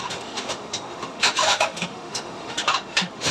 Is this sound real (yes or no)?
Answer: no